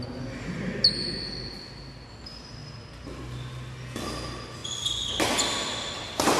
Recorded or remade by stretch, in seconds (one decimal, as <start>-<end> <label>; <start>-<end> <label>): 0.0-4.6 recorded; 4.6-5.1 remade; 5.1-6.4 recorded